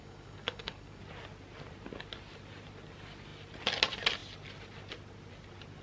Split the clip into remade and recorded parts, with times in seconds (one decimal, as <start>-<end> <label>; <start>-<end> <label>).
0.0-1.0 remade; 1.0-5.8 recorded